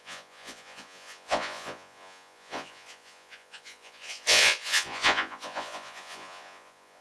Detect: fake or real fake